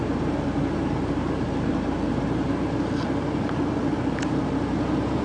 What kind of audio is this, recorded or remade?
recorded